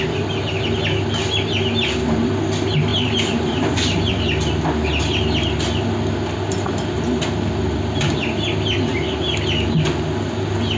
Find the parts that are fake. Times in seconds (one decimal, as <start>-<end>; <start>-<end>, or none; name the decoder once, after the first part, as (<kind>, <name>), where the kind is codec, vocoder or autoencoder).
2.9-4.1 (vocoder, BigVGAN v2)